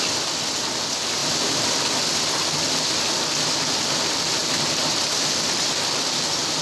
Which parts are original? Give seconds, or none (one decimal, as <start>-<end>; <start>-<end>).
0.0-6.6